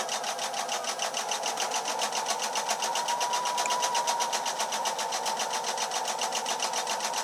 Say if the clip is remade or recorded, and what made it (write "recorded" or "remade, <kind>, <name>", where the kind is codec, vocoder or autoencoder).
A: recorded